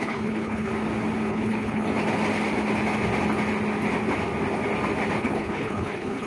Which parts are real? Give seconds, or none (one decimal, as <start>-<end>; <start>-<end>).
0.7-1.3; 1.9-5.2